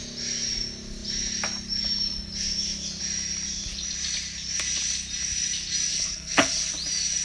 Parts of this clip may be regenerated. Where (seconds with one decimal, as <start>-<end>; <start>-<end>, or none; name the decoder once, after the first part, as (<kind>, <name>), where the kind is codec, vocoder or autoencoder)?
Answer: 5.9-6.7 (codec, HILCodec)